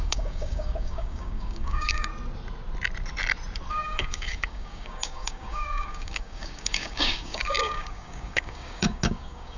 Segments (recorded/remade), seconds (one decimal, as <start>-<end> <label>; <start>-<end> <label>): 0.0-2.1 remade; 2.1-3.7 recorded; 3.7-9.6 remade